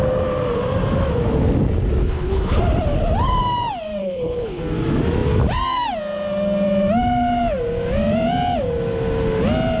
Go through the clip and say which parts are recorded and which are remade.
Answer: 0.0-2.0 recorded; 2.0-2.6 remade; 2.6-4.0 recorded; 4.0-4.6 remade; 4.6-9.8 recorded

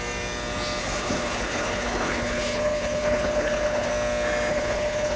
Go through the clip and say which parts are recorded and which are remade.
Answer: 0.0-0.8 recorded; 0.8-3.9 remade; 3.9-4.5 recorded; 4.5-5.2 remade

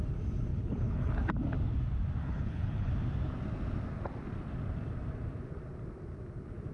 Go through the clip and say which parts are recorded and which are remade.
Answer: 0.0-0.5 recorded; 0.5-1.1 remade; 1.1-2.2 recorded; 2.2-2.9 remade; 2.9-6.7 recorded

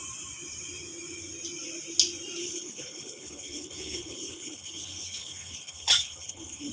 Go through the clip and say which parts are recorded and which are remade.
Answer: 0.0-2.4 recorded; 2.4-6.7 remade

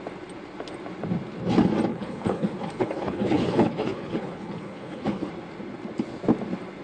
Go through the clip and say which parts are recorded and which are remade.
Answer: 0.0-1.9 recorded; 1.9-5.3 remade; 5.3-6.8 recorded

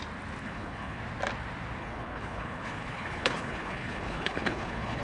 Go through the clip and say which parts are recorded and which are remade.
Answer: 0.0-0.4 recorded; 0.4-1.0 remade; 1.0-1.8 recorded; 1.8-5.0 remade